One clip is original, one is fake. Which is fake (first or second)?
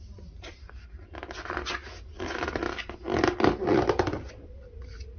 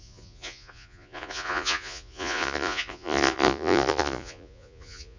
second